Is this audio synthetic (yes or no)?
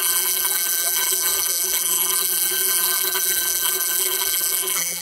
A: yes